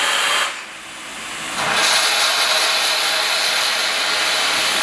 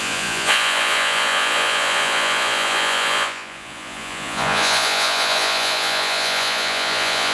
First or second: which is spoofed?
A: second